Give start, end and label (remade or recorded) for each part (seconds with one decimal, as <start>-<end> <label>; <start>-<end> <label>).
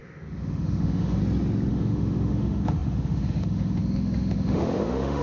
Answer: 0.0-1.2 remade; 1.2-1.7 recorded; 1.7-5.2 remade